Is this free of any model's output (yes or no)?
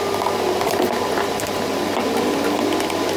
yes